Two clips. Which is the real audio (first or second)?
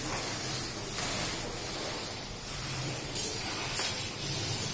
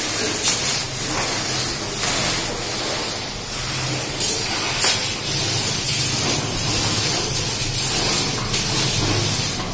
second